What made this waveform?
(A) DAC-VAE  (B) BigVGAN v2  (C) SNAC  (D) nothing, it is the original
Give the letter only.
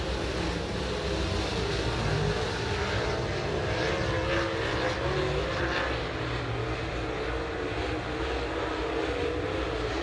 D